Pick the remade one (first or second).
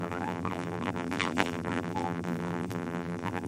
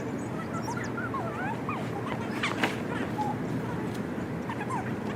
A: first